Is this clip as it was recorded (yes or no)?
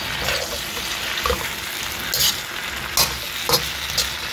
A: yes